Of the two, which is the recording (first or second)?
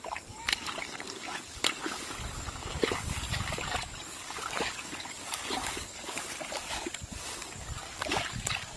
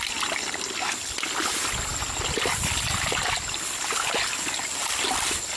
second